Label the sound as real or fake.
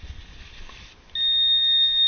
real